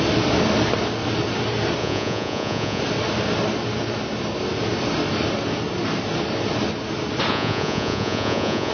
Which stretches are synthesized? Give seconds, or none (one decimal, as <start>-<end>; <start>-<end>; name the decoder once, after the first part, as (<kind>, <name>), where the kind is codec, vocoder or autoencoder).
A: 1.8-2.8 (vocoder, Vocos); 7.3-8.7